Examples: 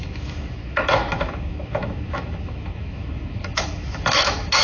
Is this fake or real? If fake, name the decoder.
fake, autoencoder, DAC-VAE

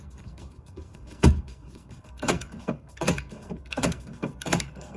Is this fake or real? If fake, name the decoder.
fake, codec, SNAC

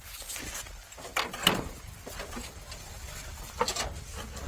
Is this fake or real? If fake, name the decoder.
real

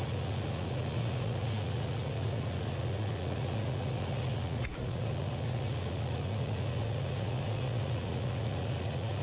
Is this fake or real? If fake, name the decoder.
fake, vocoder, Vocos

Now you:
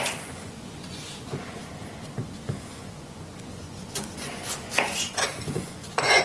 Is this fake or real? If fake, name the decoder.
fake, vocoder, Vocos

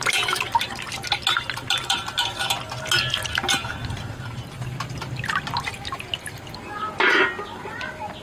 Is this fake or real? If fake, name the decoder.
real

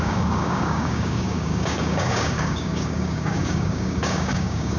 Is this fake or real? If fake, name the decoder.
fake, codec, DAC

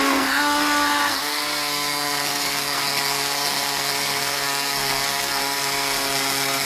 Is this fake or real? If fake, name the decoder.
fake, codec, SNAC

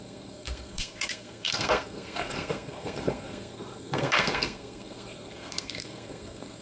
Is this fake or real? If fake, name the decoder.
fake, codec, SNAC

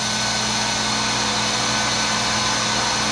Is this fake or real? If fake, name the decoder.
real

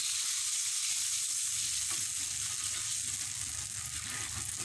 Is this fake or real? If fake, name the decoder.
real